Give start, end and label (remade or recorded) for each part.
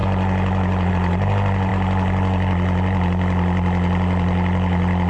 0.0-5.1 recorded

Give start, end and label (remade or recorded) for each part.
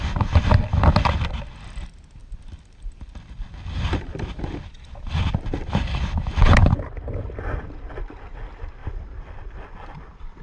0.0-2.2 recorded; 2.2-6.9 remade; 6.9-8.8 recorded; 8.8-10.4 remade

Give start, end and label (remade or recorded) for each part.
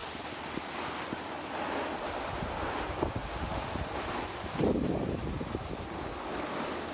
0.0-3.2 recorded; 3.2-4.1 remade; 4.1-6.9 recorded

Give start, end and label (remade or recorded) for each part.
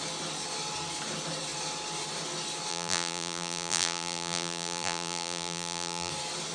0.0-2.7 recorded; 2.7-6.1 remade; 6.1-6.5 recorded